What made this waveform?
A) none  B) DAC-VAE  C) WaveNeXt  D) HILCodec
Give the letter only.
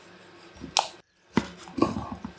A